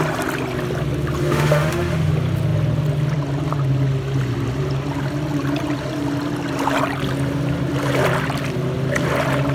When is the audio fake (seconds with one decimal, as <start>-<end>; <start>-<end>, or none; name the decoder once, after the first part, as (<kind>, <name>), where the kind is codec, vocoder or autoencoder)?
1.2-2.1 (autoencoder, DAC-VAE)

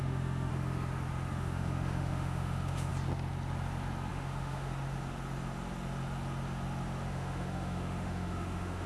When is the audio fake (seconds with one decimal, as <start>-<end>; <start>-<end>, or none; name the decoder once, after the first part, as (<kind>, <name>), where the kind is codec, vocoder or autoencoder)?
0.0-0.5 (autoencoder, DAC-VAE); 1.3-2.9; 4.1-4.7; 7.1-8.9